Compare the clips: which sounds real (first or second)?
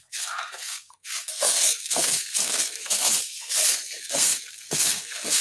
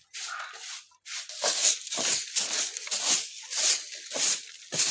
second